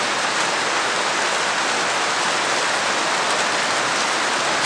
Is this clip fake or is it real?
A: real